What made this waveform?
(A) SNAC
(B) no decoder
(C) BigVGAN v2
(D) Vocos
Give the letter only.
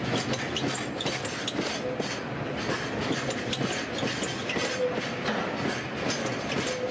B